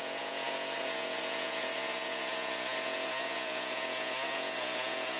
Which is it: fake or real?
fake